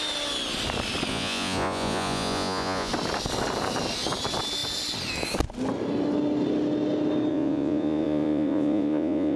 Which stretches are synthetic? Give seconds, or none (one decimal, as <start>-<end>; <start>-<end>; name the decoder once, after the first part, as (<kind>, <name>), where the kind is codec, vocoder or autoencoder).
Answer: 1.1-2.9 (vocoder, Vocos); 7.3-9.4

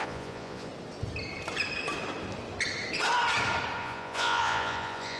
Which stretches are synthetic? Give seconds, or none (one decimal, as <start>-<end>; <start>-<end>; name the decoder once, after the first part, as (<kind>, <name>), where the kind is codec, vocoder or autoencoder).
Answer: 0.0-0.7 (vocoder, Vocos); 3.8-5.2